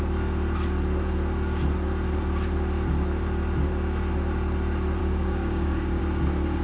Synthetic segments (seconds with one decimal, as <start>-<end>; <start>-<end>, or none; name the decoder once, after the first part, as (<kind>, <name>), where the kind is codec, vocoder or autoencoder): 5.0-6.0 (codec, DAC)